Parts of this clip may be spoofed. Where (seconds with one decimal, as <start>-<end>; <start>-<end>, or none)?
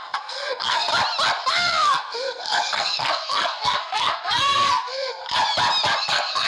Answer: 0.0-0.9; 1.5-5.2; 6.0-6.5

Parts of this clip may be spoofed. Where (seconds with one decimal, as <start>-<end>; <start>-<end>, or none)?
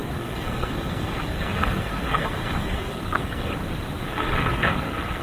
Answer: 0.0-3.5; 4.0-5.2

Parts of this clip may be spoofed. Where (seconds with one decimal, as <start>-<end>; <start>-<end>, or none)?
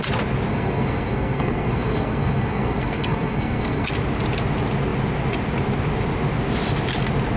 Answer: 0.5-3.9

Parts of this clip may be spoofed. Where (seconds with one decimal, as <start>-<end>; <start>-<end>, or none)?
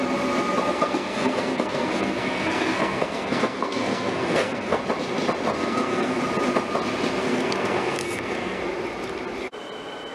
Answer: 0.7-4.8; 5.5-6.2; 7.2-8.6